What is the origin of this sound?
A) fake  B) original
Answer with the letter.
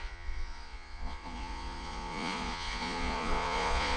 A